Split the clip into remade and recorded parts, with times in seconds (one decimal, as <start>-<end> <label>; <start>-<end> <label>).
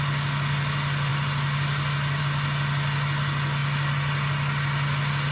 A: 0.0-5.3 recorded